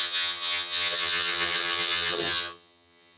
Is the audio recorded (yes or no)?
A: no